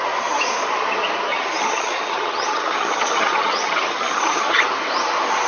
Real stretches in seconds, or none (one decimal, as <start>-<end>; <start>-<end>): 0.0-1.3; 4.6-5.5